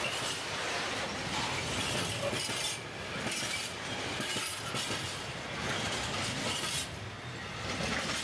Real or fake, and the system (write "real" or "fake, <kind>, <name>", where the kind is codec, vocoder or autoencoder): real